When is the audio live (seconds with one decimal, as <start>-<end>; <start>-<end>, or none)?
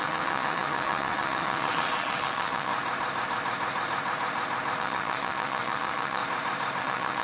2.7-4.8; 6.2-6.8